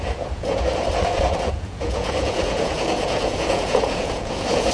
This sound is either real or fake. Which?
fake